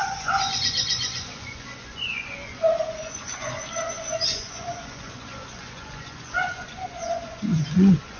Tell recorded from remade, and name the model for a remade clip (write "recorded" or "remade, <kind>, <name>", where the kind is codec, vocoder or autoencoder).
remade, vocoder, Vocos